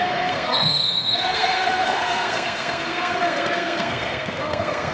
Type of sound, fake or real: fake